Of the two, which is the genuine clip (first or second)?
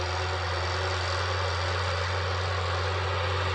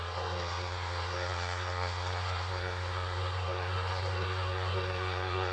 first